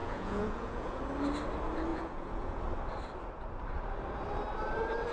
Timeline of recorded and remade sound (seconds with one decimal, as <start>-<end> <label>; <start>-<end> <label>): 0.0-1.0 remade; 1.0-1.9 recorded; 1.9-2.6 remade; 2.6-5.1 recorded

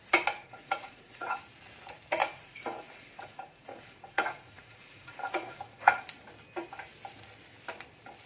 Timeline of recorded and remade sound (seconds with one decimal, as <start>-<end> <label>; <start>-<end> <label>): 0.0-0.4 recorded; 0.4-1.4 remade; 1.4-2.2 recorded; 2.2-6.0 remade; 6.0-8.3 recorded

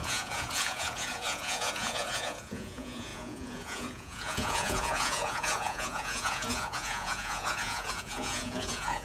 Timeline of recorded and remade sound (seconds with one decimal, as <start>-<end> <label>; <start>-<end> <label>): 0.0-9.0 remade

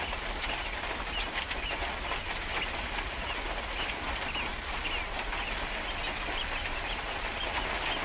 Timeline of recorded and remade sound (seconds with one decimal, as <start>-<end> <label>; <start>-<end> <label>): 0.0-8.0 recorded

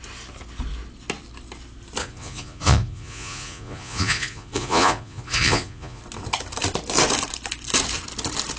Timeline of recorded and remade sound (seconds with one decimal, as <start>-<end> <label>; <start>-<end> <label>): 0.0-2.0 recorded; 2.0-6.0 remade; 6.0-8.6 recorded

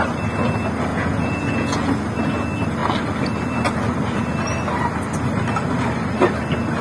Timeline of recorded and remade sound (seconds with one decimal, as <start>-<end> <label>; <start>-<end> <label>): 0.0-0.9 recorded; 0.9-1.9 remade; 1.9-6.8 recorded

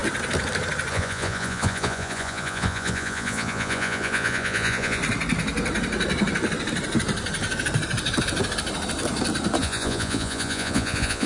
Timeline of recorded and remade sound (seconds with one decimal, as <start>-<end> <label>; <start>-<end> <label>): 0.0-0.9 recorded; 0.9-5.0 remade; 5.0-9.6 recorded; 9.6-11.3 remade

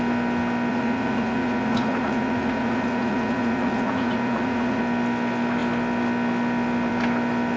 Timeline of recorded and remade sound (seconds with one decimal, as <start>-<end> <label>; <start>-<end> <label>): 0.0-0.7 recorded; 0.7-4.8 remade; 4.8-7.6 recorded